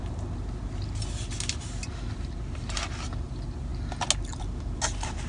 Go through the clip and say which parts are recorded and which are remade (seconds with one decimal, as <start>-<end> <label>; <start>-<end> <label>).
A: 0.0-5.3 recorded